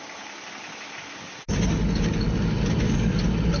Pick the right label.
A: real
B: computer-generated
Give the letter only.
A